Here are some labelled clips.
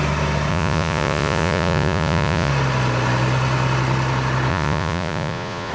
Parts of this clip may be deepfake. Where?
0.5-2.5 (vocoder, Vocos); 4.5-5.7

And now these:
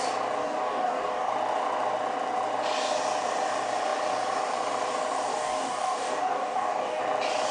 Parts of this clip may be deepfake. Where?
0.4-1.3 (codec, DAC); 5.3-7.0

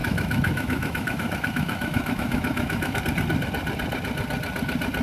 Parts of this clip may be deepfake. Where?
0.0-3.0 (autoencoder, DAC-VAE)

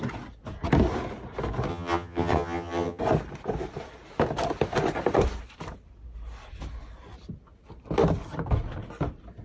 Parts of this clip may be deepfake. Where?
1.7-3.0 (vocoder, HiFi-GAN)

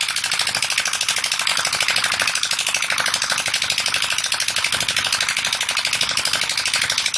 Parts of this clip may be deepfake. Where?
1.5-4.2 (vocoder, BigVGAN v2)

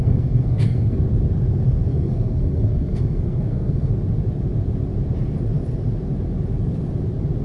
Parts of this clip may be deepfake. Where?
0.0-1.0 (codec, SNAC); 1.9-3.9

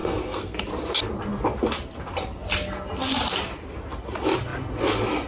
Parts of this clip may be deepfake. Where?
0.0-0.6 (codec, SNAC)